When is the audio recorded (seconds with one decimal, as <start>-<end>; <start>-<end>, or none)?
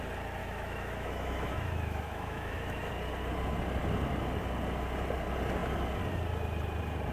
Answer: 0.0-0.4; 2.9-7.1